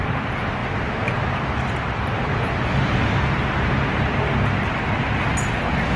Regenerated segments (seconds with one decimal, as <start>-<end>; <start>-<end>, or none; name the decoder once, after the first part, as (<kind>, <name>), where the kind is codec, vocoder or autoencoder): none